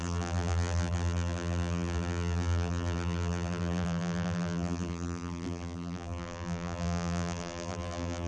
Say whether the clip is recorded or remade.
remade